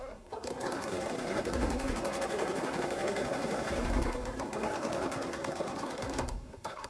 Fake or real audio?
fake